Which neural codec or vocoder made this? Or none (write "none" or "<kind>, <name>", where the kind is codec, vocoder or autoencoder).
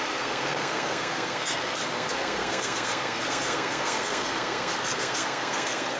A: codec, SNAC